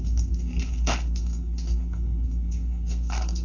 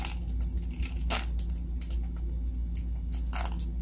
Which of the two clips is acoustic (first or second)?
second